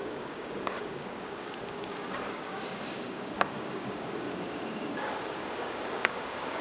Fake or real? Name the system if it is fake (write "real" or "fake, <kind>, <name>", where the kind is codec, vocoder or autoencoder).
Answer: fake, codec, DAC